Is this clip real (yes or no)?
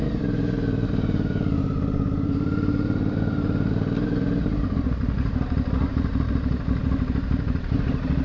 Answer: no